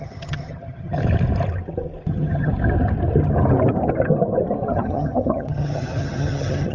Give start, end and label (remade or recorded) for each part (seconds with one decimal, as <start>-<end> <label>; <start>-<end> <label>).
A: 0.0-1.0 remade; 1.0-2.1 recorded; 2.1-2.5 remade; 2.5-4.7 recorded; 4.7-6.7 remade